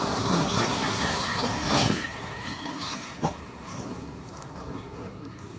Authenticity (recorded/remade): remade